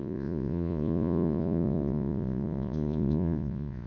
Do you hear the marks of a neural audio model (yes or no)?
yes